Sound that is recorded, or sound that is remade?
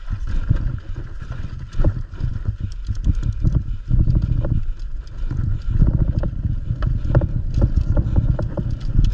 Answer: recorded